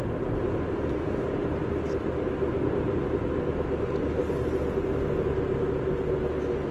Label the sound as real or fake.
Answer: real